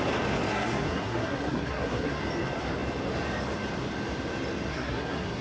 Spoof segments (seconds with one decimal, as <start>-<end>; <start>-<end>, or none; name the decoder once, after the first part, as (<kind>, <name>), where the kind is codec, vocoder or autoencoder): 0.5-2.2 (codec, SNAC); 4.7-5.4